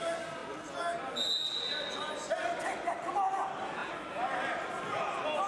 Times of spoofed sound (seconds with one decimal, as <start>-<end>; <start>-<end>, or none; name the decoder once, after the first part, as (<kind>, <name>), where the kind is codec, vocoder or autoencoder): none